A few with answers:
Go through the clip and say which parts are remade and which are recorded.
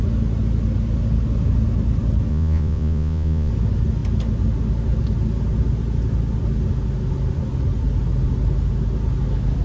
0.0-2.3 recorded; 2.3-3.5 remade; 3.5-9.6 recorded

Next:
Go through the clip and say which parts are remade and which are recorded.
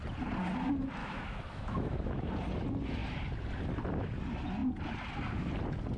0.0-1.0 recorded; 1.0-2.3 remade; 2.3-6.0 recorded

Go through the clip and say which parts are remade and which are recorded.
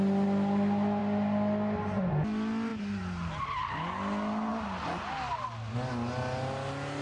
0.0-7.0 recorded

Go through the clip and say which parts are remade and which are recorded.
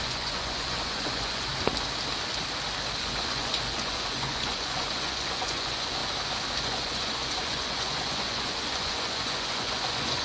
0.0-1.5 remade; 1.5-3.0 recorded; 3.0-6.0 remade; 6.0-6.6 recorded; 6.6-10.2 remade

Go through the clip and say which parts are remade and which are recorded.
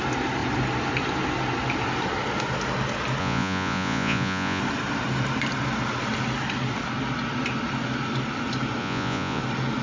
0.0-3.2 recorded; 3.2-4.6 remade; 4.6-8.8 recorded; 8.8-9.4 remade; 9.4-9.8 recorded